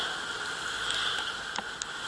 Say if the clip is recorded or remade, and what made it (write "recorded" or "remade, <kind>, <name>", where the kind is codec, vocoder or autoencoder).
recorded